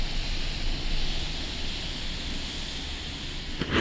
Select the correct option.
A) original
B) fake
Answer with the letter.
A